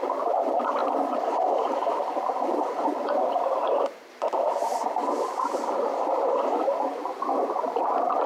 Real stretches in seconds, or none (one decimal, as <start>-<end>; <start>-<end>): none